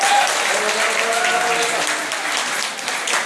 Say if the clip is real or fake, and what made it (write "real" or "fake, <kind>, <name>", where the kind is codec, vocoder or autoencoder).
real